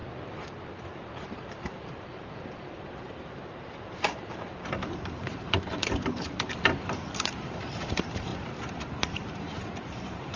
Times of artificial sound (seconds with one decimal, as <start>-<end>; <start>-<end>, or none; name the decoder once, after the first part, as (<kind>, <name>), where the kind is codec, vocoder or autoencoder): 1.2-8.3 (vocoder, BigVGAN v2); 9.1-10.4

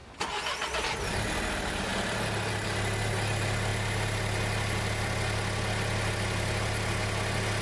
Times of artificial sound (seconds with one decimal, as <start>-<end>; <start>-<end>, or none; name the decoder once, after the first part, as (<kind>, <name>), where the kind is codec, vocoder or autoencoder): none

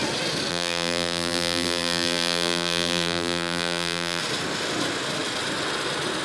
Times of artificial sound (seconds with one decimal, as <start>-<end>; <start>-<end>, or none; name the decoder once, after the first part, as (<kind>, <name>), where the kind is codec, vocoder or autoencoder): 0.5-4.2 (vocoder, BigVGAN v2)

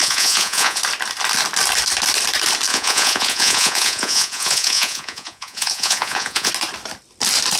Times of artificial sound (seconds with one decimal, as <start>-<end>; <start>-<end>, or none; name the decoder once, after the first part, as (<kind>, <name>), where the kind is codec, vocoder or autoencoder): 0.0-0.8 (vocoder, Vocos); 2.7-6.5

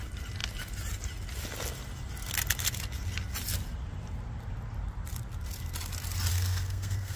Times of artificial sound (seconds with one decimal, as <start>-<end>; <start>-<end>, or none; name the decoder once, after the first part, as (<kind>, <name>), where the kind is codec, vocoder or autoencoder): 6.3-7.2 (codec, SNAC)

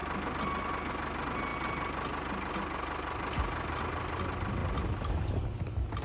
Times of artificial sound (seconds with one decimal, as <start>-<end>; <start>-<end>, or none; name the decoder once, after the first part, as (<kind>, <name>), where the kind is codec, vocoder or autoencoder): 4.6-5.4 (vocoder, BigVGAN v2)

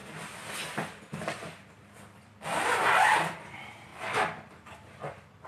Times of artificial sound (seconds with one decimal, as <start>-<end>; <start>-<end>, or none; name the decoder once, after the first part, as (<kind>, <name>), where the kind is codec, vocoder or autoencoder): 3.9-5.0 (vocoder, BigVGAN v2)